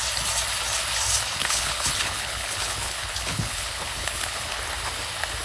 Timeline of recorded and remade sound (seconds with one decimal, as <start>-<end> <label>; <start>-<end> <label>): 0.0-1.4 recorded; 1.4-4.6 remade; 4.6-5.4 recorded